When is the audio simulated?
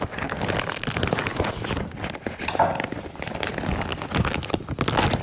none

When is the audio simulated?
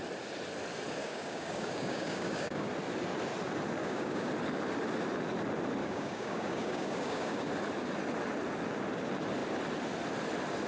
1.0-2.7 (codec, DAC); 3.8-4.3; 5.8-7.5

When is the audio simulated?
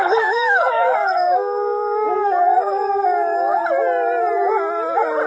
0.0-3.6 (codec, DAC)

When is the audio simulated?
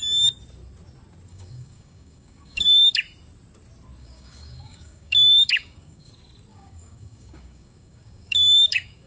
1.3-3.0 (codec, DAC); 4.0-6.1; 6.5-9.1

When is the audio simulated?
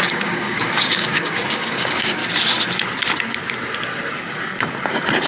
0.0-2.2 (codec, DAC)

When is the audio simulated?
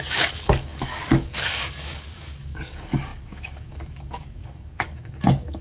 0.0-5.6 (codec, DAC)